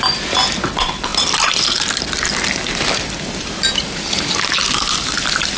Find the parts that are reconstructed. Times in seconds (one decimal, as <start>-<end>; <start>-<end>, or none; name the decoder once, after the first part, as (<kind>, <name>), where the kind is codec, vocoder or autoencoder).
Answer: none